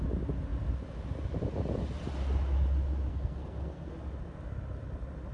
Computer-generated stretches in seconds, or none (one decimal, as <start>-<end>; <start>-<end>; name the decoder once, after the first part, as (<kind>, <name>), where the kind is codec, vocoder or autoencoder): 3.1-3.9 (codec, SNAC)